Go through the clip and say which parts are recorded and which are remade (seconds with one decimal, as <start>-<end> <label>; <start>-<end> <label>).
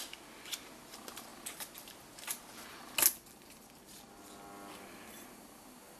0.0-6.0 recorded